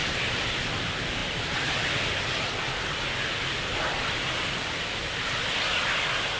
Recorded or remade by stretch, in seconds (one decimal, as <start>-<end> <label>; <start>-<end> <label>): 0.0-0.6 remade; 0.6-1.2 recorded; 1.2-5.0 remade; 5.0-6.4 recorded